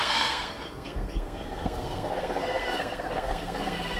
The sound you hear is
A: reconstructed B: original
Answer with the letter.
A